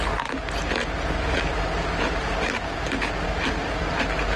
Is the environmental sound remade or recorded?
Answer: recorded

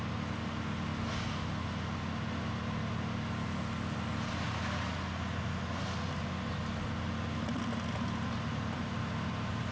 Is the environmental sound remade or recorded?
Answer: recorded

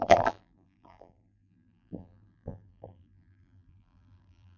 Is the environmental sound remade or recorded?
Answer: remade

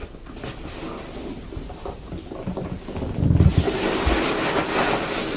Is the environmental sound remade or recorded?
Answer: recorded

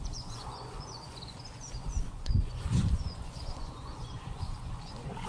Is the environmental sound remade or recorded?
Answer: remade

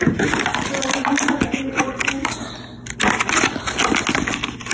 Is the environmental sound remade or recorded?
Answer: recorded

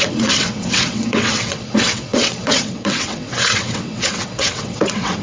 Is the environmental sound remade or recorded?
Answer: remade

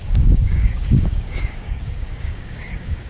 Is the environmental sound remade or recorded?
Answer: remade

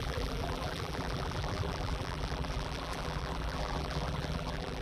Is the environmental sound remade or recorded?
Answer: remade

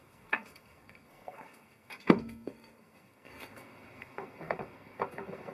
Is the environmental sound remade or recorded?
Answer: remade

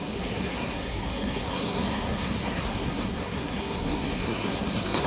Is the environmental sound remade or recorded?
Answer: remade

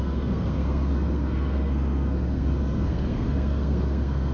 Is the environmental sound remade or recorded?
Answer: remade